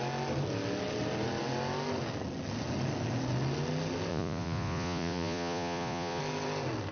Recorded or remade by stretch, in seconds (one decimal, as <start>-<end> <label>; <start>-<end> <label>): 0.0-4.1 recorded; 4.1-6.2 remade; 6.2-6.9 recorded